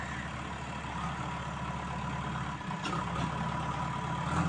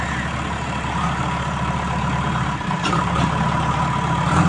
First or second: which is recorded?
first